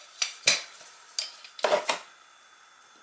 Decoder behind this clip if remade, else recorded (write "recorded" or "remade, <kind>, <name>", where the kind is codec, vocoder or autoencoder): recorded